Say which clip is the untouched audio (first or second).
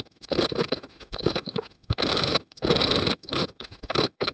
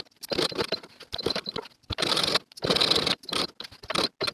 second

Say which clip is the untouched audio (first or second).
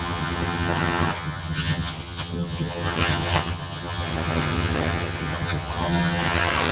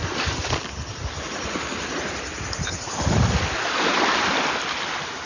second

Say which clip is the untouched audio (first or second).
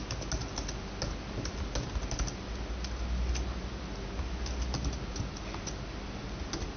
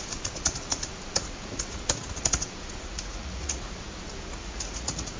first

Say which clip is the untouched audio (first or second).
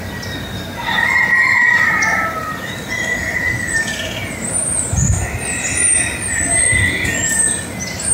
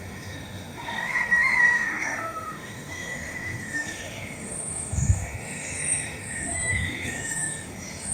first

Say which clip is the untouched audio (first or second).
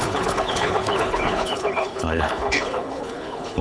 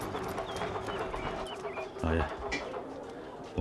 second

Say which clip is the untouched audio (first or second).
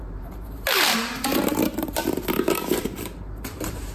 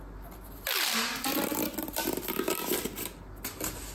second